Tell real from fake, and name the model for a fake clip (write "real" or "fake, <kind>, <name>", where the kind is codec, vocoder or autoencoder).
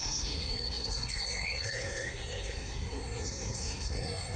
fake, codec, SNAC